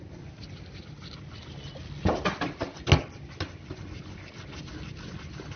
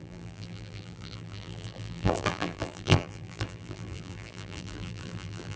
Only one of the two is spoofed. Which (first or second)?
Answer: second